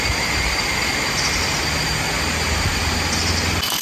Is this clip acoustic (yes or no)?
yes